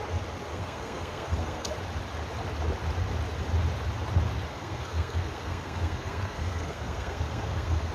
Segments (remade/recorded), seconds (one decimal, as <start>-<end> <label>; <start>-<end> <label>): 0.0-0.5 recorded; 0.5-1.7 remade; 1.7-4.5 recorded; 4.5-7.9 remade